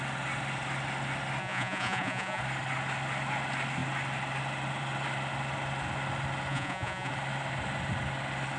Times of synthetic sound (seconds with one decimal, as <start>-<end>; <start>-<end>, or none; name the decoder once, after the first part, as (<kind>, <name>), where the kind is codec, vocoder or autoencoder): 1.4-2.4 (vocoder, Vocos); 6.5-7.1